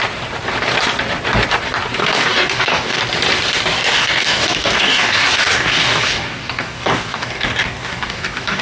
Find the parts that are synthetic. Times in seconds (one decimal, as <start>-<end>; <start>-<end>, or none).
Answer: 2.0-3.0; 3.8-8.6